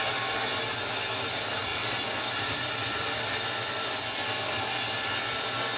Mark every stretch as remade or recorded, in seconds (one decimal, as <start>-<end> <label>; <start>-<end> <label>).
0.0-5.8 recorded

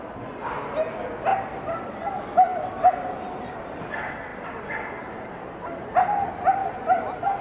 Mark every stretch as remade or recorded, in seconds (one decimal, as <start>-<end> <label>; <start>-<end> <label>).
0.0-2.5 recorded; 2.5-3.8 remade; 3.8-4.3 recorded; 4.3-4.9 remade; 4.9-6.6 recorded; 6.6-7.4 remade

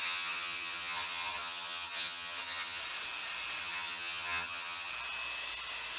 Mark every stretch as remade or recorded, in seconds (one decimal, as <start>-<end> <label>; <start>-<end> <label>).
0.0-2.8 remade; 2.8-3.6 recorded; 3.6-4.9 remade; 4.9-6.0 recorded

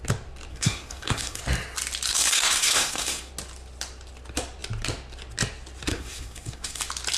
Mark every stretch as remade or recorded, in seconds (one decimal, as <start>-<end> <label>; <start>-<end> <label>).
0.0-0.5 recorded; 0.5-1.4 remade; 1.4-2.1 recorded; 2.1-3.3 remade; 3.3-5.9 recorded; 5.9-6.8 remade; 6.8-7.2 recorded

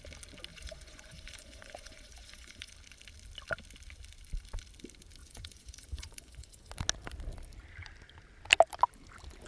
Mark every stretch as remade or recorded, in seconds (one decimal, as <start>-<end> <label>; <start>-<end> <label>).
0.0-0.5 recorded; 0.5-2.7 remade; 2.7-5.2 recorded; 5.2-6.7 remade; 6.7-9.5 recorded

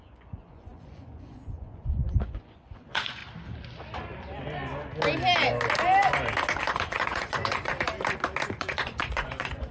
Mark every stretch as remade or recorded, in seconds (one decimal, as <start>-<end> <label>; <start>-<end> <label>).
0.0-3.2 remade; 3.2-6.6 recorded; 6.6-7.7 remade; 7.7-8.6 recorded; 8.6-9.7 remade

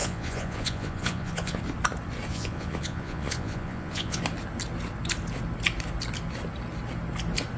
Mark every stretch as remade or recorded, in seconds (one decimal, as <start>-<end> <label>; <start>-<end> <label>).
0.0-1.6 remade; 1.6-2.3 recorded; 2.3-4.2 remade; 4.2-7.6 recorded